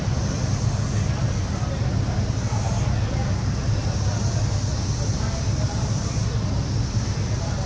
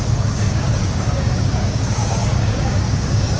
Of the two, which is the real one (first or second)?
first